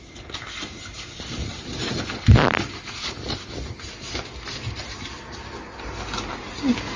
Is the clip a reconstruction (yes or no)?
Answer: no